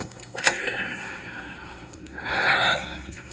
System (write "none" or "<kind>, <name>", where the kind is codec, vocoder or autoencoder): codec, SNAC